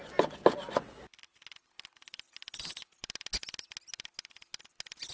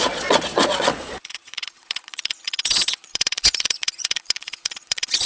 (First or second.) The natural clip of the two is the first